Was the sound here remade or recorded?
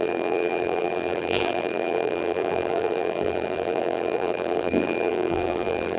remade